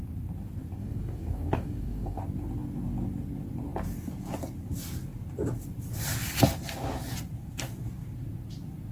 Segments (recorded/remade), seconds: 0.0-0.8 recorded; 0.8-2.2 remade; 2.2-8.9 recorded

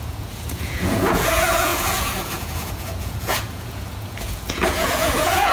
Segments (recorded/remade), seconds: 0.0-5.5 remade